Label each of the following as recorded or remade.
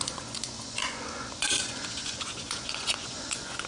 remade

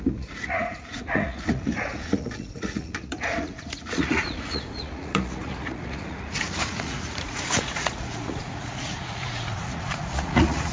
remade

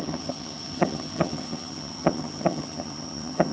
remade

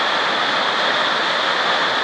recorded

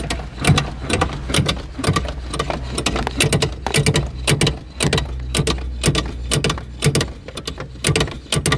recorded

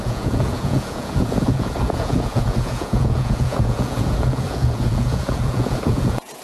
remade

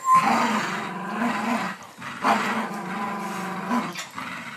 recorded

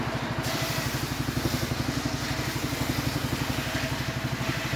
recorded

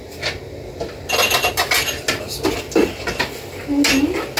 recorded